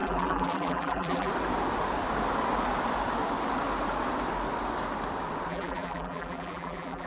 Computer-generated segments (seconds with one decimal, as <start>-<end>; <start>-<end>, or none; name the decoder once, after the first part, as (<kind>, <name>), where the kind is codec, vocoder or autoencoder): 0.0-1.3 (vocoder, BigVGAN v2); 5.5-7.1